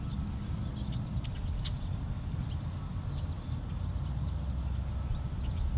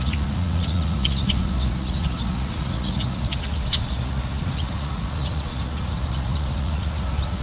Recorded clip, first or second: first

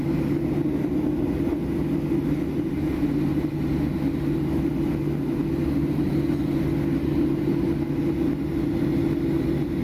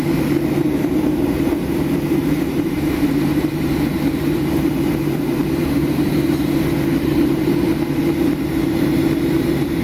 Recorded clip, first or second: first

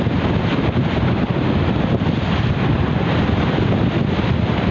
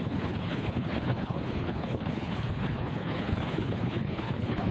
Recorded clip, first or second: first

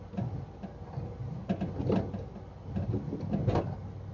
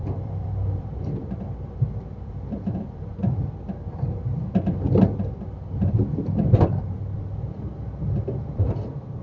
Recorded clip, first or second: first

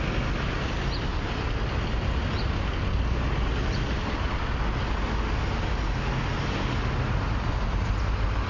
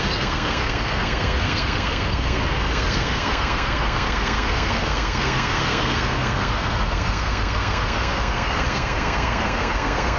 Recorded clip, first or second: first